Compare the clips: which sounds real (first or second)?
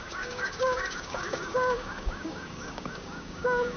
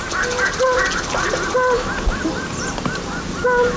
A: second